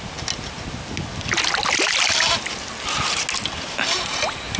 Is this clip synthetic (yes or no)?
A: no